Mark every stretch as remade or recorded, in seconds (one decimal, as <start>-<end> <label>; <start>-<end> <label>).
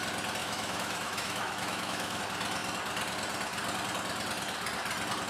0.0-0.4 recorded; 0.4-2.2 remade; 2.2-5.3 recorded